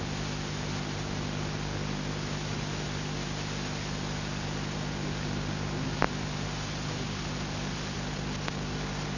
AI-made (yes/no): no